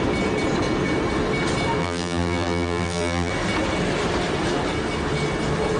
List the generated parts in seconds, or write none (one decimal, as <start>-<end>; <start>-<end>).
1.8-3.3